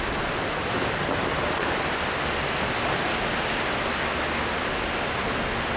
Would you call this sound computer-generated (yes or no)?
no